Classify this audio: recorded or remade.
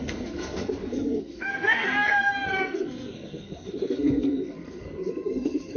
remade